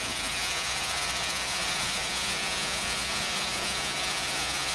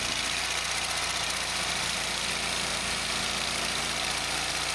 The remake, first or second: first